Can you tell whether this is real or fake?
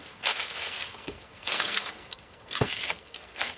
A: fake